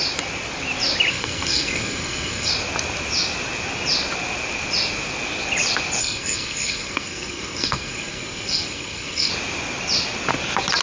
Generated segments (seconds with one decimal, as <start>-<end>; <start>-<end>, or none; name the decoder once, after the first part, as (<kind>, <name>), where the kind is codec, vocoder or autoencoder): 1.1-2.5 (codec, SNAC); 6.0-9.3